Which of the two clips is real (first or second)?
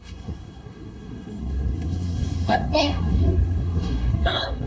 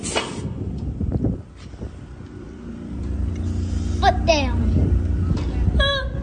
second